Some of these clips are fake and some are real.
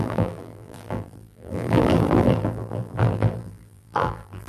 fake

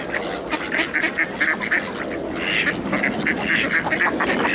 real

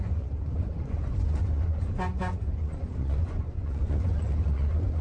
fake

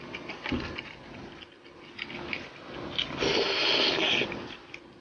real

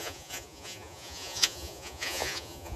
fake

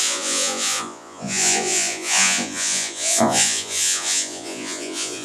fake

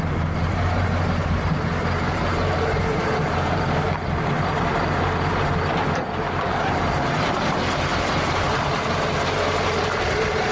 fake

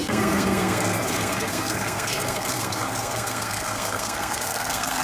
fake